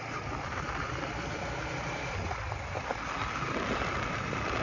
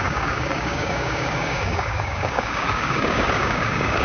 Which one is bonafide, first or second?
first